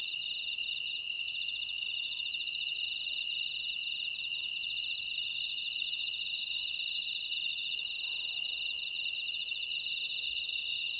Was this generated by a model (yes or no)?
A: no